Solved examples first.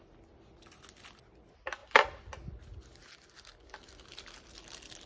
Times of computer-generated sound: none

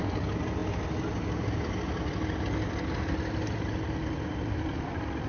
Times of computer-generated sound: none

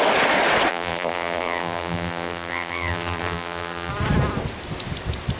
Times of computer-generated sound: 0.7-3.9 (vocoder, BigVGAN v2)